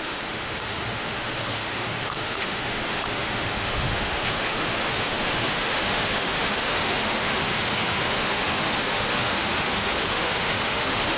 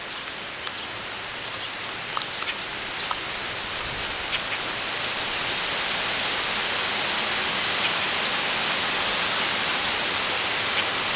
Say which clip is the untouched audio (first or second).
second